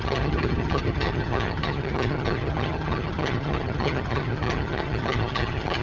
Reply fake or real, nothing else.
fake